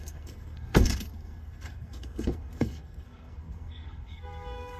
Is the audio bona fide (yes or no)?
no